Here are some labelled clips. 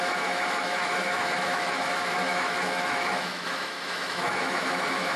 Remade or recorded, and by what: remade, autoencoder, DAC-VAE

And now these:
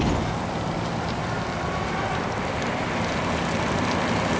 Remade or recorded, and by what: remade, vocoder, BigVGAN v2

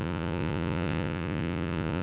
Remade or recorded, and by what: remade, vocoder, Vocos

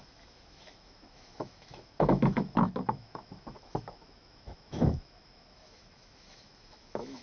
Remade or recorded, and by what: remade, autoencoder, DAC-VAE